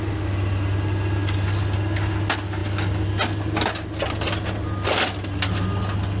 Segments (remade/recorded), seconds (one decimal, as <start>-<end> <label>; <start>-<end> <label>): 0.0-6.2 recorded